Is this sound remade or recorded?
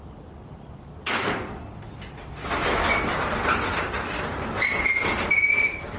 recorded